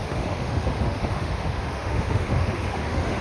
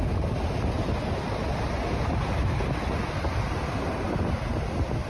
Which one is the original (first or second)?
second